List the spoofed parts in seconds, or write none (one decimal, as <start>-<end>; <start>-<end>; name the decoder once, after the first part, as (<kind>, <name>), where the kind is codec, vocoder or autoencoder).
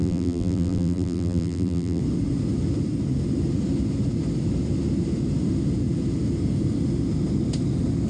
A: 0.0-2.0 (vocoder, BigVGAN v2)